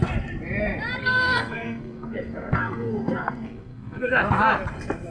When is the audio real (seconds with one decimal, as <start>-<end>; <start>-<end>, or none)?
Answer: 0.0-1.0; 4.1-5.1